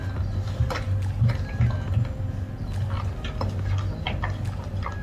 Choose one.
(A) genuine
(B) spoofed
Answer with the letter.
A